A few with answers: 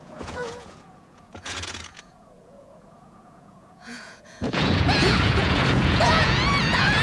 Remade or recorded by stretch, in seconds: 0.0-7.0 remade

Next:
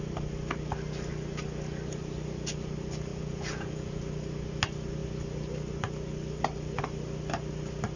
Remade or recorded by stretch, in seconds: 0.0-3.1 recorded; 3.1-4.0 remade; 4.0-8.0 recorded